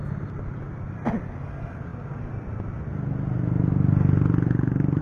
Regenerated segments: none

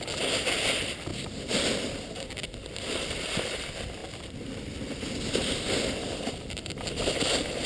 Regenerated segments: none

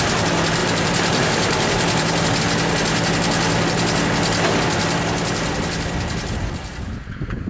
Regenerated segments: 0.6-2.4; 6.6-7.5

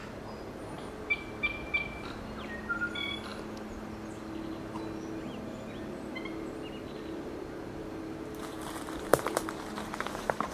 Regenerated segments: 9.1-10.5

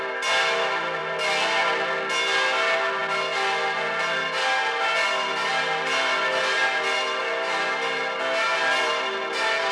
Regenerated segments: none

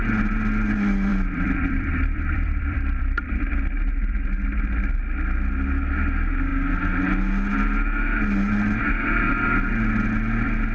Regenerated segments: 1.1-3.4